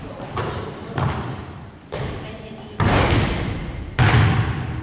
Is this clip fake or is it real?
fake